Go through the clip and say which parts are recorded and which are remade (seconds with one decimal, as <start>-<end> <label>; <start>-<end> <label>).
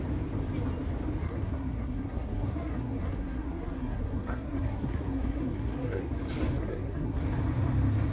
0.0-1.2 recorded; 1.2-6.1 remade; 6.1-6.6 recorded; 6.6-7.2 remade; 7.2-8.1 recorded